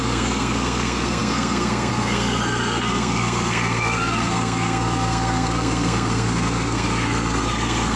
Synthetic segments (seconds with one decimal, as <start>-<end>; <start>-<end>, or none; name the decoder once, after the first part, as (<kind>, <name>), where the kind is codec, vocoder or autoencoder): 0.0-8.0 (codec, SNAC)

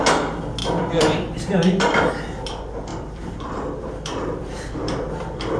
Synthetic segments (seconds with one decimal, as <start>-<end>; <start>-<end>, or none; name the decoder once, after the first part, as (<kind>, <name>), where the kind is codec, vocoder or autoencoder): 0.6-2.1 (vocoder, BigVGAN v2); 2.9-5.6

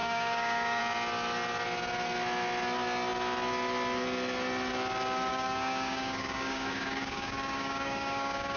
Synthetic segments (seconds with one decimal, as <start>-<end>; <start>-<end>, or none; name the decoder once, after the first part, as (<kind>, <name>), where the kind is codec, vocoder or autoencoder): 0.0-0.8 (codec, DAC); 5.3-8.6

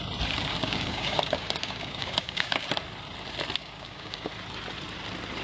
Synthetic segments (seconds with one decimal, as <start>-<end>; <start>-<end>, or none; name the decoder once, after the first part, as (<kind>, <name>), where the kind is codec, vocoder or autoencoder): 0.5-2.7 (codec, DAC); 3.6-4.3